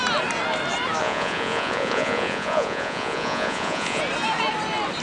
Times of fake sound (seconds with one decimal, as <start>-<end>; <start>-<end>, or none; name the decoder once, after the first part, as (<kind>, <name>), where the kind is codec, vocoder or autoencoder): 1.0-4.0 (vocoder, Vocos)